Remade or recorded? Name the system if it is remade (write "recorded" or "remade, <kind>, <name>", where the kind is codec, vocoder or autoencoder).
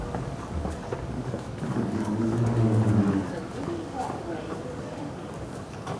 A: remade, codec, DAC